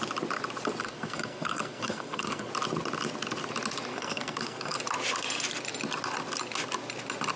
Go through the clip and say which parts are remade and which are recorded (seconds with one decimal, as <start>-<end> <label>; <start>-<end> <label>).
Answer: 0.0-0.8 recorded; 0.8-2.5 remade; 2.5-3.9 recorded; 3.9-4.8 remade; 4.8-7.4 recorded